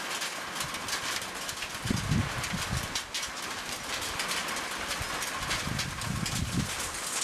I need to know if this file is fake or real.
real